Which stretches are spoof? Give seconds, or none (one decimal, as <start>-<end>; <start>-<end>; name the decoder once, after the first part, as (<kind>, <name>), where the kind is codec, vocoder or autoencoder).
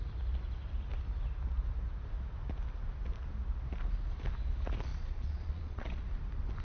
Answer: 4.9-6.0 (vocoder, Vocos)